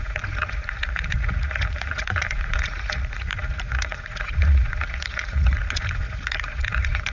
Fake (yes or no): yes